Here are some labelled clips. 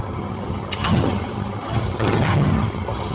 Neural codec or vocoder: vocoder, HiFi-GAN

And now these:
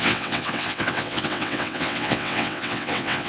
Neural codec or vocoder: vocoder, WaveNeXt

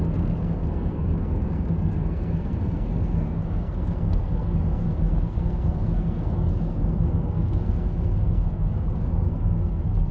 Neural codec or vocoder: codec, SNAC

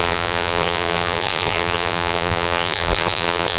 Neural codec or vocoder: vocoder, BigVGAN v2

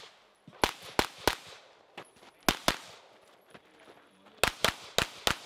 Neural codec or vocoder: none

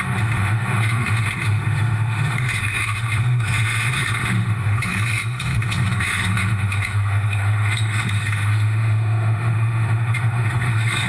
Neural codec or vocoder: autoencoder, DAC-VAE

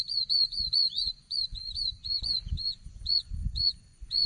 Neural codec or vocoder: vocoder, Vocos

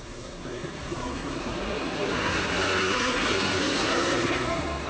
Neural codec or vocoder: codec, SNAC